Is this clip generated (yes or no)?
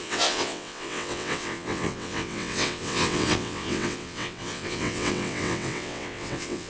yes